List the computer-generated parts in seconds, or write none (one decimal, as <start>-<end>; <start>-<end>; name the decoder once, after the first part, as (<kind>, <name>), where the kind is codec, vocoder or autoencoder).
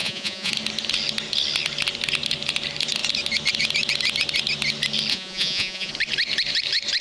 0.0-0.5 (vocoder, Vocos); 5.1-5.9